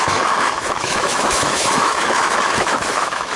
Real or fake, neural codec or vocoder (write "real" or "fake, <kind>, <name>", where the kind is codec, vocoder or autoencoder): fake, autoencoder, DAC-VAE